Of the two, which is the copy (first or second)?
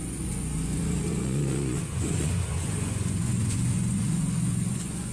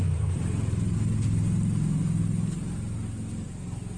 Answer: first